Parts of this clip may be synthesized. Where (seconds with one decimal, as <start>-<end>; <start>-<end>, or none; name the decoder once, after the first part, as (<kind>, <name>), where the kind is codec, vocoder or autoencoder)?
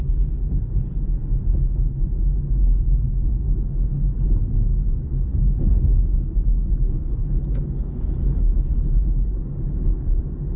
5.3-10.2 (codec, HILCodec)